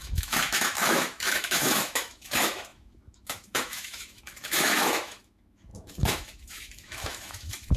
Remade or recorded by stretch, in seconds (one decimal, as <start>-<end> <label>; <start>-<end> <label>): 0.0-7.8 remade